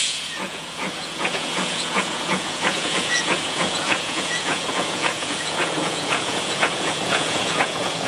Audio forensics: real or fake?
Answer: fake